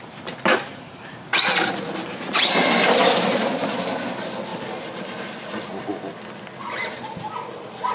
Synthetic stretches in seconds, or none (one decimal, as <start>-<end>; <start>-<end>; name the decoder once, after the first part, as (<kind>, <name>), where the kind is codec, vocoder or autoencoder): 0.5-1.4 (vocoder, Vocos)